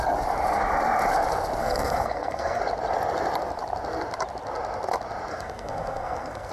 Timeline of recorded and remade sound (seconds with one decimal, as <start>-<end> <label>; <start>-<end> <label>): 0.0-1.6 recorded; 1.6-2.6 remade; 2.6-5.3 recorded; 5.3-6.5 remade